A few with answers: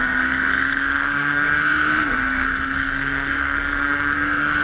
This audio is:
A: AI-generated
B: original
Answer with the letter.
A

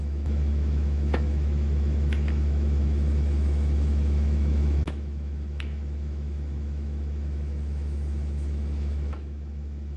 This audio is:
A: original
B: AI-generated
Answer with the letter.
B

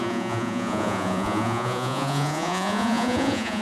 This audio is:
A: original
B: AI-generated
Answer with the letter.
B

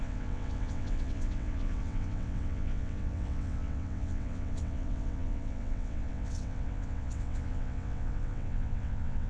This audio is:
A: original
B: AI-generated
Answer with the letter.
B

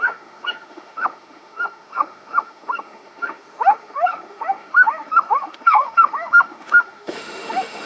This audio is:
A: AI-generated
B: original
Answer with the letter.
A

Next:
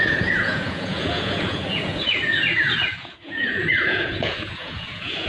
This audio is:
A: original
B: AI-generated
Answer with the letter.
B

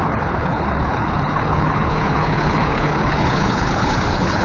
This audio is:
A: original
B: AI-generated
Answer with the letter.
B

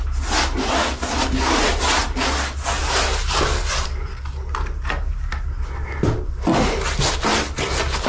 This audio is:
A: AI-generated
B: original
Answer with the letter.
B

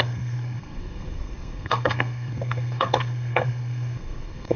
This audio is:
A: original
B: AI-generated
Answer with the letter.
B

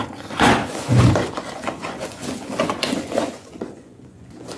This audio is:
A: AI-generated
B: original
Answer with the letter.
A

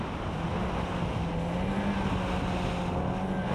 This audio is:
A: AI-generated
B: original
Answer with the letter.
B